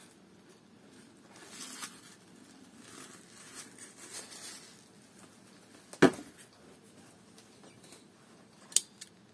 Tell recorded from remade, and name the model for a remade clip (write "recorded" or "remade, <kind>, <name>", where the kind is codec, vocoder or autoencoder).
recorded